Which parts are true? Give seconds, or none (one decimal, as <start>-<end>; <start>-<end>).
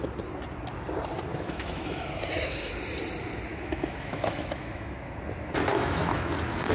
0.0-1.3; 2.2-3.5; 5.1-5.7; 6.3-6.7